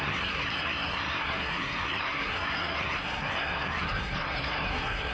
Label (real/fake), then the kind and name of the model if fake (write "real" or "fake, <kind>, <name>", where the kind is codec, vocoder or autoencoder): fake, codec, SNAC